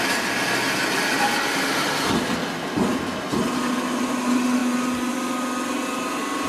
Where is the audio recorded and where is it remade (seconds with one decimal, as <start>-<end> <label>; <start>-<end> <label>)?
0.0-4.6 recorded; 4.6-5.1 remade; 5.1-6.5 recorded